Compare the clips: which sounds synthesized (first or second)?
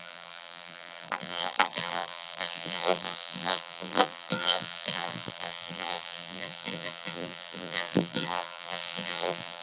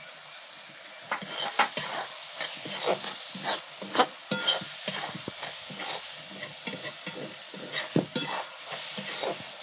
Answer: first